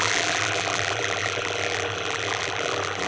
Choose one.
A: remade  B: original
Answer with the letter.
A